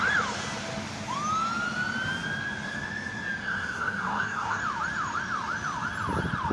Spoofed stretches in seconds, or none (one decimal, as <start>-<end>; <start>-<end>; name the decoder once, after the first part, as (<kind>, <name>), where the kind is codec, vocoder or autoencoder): 3.4-4.6 (codec, SNAC)